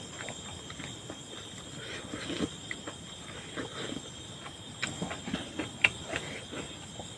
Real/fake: real